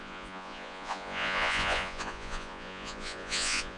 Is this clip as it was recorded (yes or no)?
no